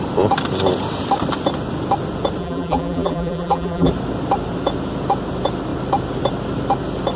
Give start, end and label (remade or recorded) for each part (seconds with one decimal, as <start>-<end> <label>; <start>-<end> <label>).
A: 0.0-2.4 recorded; 2.4-3.9 remade; 3.9-7.2 recorded